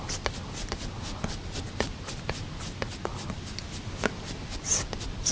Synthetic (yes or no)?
no